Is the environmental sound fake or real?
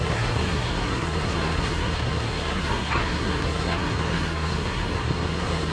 fake